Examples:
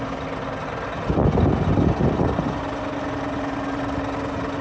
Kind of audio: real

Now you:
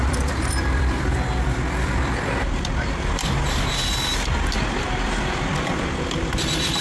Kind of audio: fake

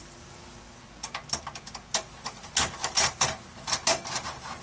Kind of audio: real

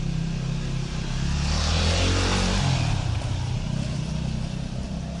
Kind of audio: real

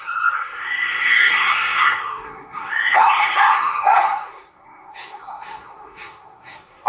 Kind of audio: fake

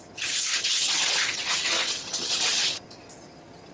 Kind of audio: fake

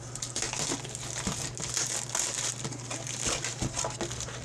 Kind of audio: real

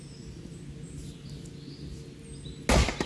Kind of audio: real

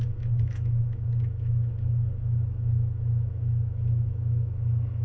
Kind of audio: fake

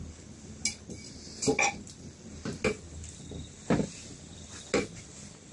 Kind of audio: real